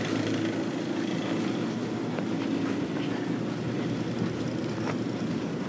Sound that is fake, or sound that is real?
real